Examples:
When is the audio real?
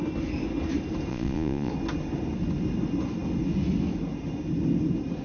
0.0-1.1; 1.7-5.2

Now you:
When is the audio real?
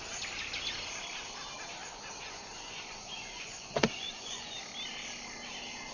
0.0-1.8; 4.6-5.9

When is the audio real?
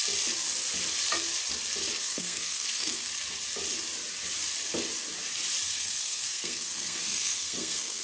0.0-2.0; 3.1-5.7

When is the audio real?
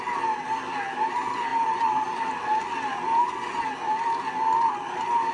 0.0-5.3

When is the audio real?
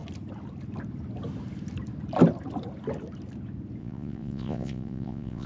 0.0-3.8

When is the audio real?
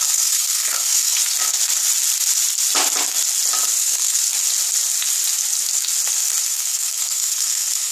1.2-3.8; 4.2-6.4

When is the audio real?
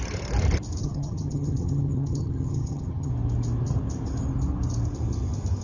0.0-0.8; 3.1-5.6